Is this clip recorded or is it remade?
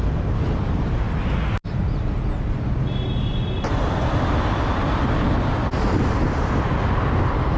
recorded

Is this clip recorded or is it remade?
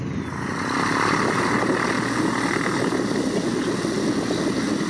recorded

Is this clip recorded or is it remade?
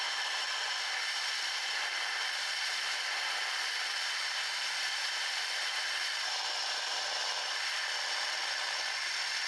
recorded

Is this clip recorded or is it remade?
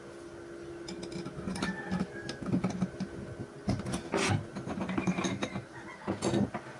recorded